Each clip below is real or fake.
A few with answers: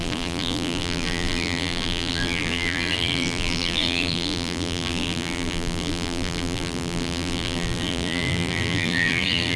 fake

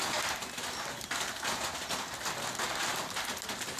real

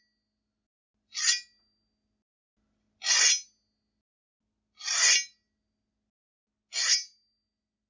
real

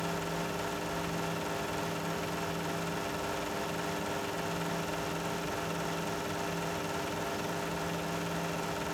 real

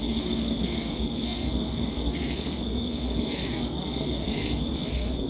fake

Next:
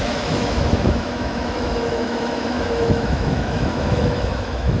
fake